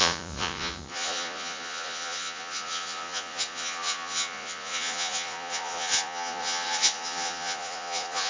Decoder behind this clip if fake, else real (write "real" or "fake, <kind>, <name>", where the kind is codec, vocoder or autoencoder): fake, vocoder, Vocos